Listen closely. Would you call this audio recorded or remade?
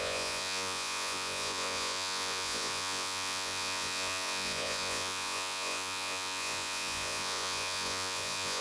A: remade